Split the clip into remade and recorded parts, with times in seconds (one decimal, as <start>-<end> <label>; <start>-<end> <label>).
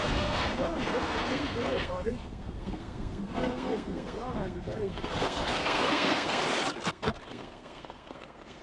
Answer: 0.0-6.4 remade; 6.4-6.9 recorded; 6.9-8.6 remade